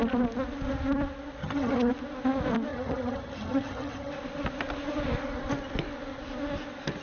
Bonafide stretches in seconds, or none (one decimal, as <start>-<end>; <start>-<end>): 0.0-1.4; 1.9-2.7; 4.1-7.0